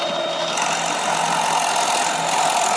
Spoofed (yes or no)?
no